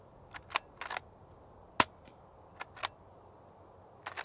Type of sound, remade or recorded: recorded